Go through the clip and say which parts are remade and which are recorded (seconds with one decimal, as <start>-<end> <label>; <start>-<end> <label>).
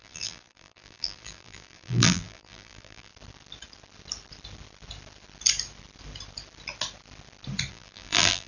0.0-3.1 remade; 3.1-7.7 recorded; 7.7-8.5 remade